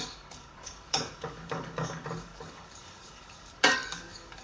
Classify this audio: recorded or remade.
remade